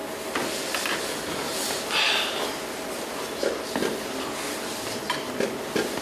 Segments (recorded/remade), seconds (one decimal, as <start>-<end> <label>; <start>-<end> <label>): 0.0-6.0 recorded

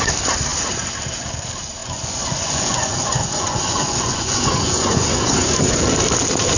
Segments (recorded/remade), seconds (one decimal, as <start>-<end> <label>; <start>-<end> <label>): 0.0-1.8 recorded; 1.8-5.8 remade; 5.8-6.6 recorded

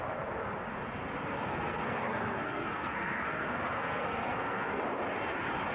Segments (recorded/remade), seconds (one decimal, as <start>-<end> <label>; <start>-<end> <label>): 0.0-1.5 recorded; 1.5-4.8 remade; 4.8-5.7 recorded

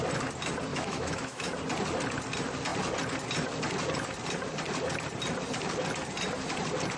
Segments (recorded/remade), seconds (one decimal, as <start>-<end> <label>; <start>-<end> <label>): 0.0-0.7 recorded; 0.7-1.5 remade; 1.5-7.0 recorded

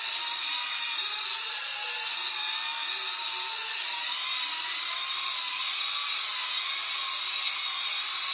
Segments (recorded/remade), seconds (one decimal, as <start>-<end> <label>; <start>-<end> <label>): 0.0-8.3 recorded